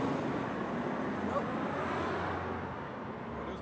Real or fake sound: real